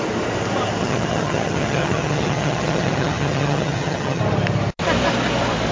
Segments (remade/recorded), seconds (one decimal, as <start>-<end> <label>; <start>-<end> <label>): 0.0-0.8 recorded; 0.8-4.2 remade; 4.2-5.7 recorded